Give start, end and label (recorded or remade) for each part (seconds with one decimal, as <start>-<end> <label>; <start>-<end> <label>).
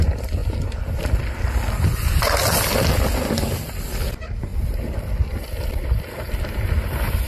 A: 0.0-7.3 recorded